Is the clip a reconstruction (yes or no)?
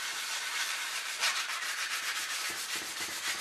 yes